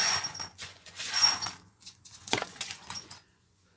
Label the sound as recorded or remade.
remade